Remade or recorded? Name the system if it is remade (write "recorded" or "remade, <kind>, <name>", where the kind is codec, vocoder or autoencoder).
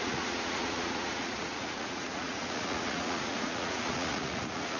remade, vocoder, Vocos